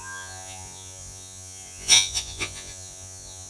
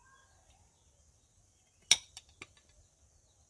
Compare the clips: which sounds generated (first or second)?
first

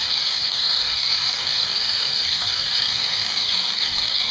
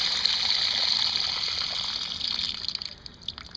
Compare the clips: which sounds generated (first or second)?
first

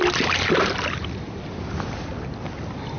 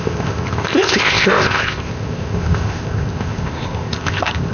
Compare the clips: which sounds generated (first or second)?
second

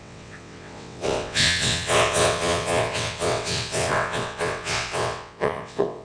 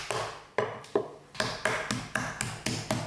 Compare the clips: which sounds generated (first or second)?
first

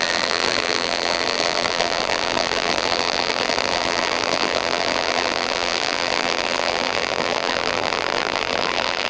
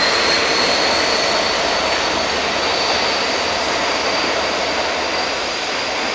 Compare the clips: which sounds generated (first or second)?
first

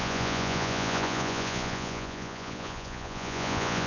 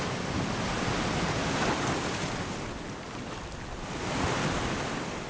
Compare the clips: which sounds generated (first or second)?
first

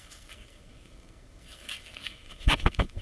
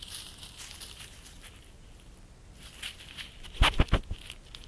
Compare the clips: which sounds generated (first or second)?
first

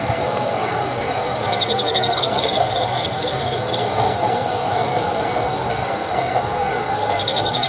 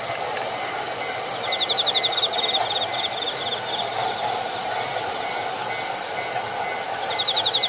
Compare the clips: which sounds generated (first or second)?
first